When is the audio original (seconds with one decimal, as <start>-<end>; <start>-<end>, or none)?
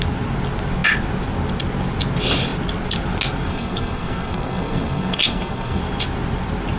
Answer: 0.0-3.5; 5.8-6.8